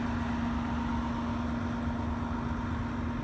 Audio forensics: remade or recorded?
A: recorded